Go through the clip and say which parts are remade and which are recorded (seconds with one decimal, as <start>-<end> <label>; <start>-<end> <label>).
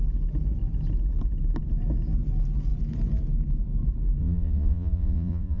0.0-4.2 recorded; 4.2-5.6 remade